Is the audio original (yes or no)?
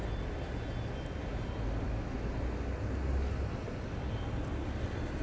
yes